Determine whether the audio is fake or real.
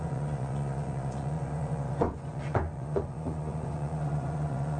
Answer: fake